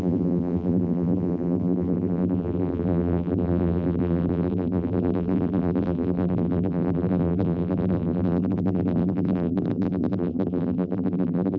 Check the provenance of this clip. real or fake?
fake